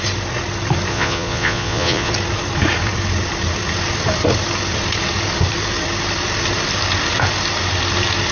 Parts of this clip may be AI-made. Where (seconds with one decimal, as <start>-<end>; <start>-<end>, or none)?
0.9-2.1